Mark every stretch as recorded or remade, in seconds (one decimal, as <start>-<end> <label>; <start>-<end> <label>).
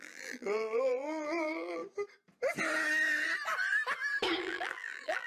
0.0-1.8 remade; 1.8-4.4 recorded; 4.4-5.3 remade